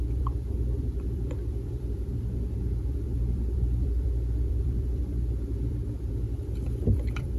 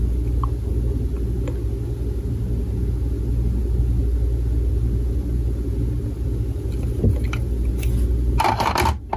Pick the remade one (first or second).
first